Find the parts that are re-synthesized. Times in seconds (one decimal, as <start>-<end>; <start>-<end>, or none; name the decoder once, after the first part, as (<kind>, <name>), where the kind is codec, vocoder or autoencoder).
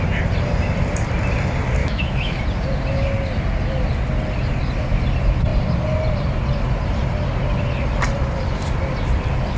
1.8-2.4 (autoencoder, DAC-VAE)